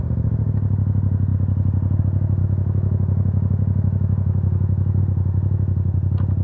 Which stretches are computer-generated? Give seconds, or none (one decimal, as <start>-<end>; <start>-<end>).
2.4-5.0